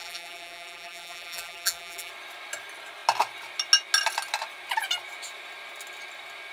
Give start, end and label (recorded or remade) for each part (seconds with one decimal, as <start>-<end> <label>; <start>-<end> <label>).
0.0-2.1 remade; 2.1-6.5 recorded